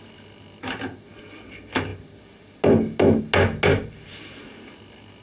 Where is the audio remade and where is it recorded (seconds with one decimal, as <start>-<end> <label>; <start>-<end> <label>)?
0.0-5.2 recorded

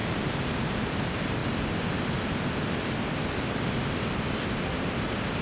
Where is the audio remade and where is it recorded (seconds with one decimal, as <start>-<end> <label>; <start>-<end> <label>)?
0.0-1.0 remade; 1.0-5.4 recorded

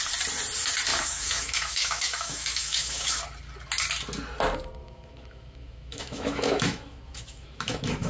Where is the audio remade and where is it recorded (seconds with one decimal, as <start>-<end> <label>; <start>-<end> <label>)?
0.0-0.9 recorded; 0.9-3.2 remade; 3.2-4.8 recorded; 4.8-8.1 remade

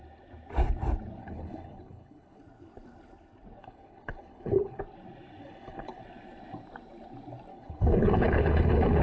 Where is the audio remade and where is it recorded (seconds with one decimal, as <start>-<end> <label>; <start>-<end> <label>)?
0.0-1.2 recorded; 1.2-2.4 remade; 2.4-3.6 recorded; 3.6-4.8 remade; 4.8-5.4 recorded; 5.4-6.0 remade; 6.0-7.5 recorded; 7.5-9.0 remade